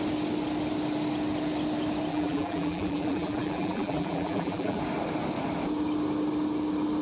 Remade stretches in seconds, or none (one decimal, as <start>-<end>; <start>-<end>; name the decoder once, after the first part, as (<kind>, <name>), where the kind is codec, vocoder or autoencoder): 2.1-4.8 (vocoder, BigVGAN v2)